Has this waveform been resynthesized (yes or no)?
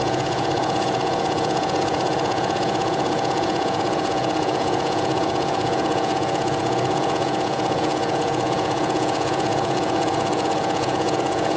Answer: yes